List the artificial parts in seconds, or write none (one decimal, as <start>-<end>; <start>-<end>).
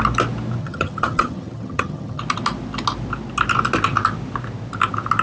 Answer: 0.6-2.2